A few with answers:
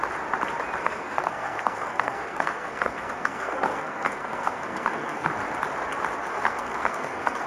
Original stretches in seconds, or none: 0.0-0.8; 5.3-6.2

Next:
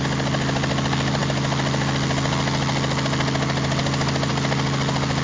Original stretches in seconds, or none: 0.0-5.2

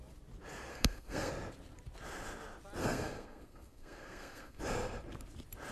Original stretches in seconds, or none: 0.0-0.7; 1.3-2.8; 4.6-5.7

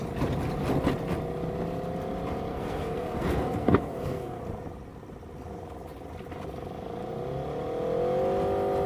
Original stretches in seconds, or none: 0.0-2.5; 4.4-8.9

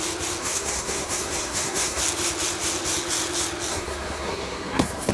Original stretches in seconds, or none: 0.0-0.4; 2.0-3.7